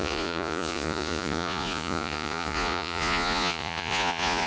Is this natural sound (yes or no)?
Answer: no